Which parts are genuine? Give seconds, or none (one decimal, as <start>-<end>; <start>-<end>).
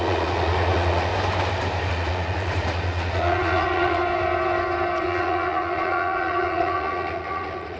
1.1-1.9; 4.0-5.0